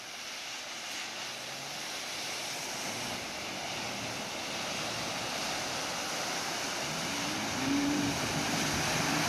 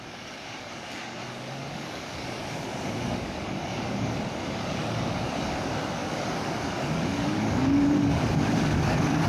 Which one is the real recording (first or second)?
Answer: first